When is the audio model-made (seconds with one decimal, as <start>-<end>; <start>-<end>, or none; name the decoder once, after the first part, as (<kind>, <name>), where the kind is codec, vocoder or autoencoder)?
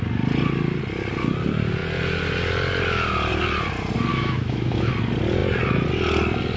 4.1-4.9 (autoencoder, DAC-VAE)